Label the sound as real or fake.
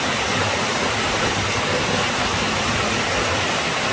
real